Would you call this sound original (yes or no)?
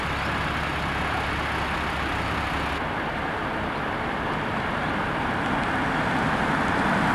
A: yes